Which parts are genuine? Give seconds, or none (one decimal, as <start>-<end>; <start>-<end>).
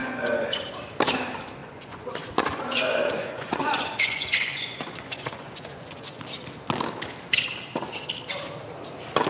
0.7-1.6; 6.2-9.3